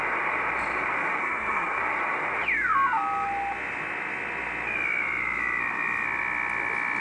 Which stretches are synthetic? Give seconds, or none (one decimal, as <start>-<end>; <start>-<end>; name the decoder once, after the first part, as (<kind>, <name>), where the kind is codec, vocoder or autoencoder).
1.2-1.8 (codec, SNAC)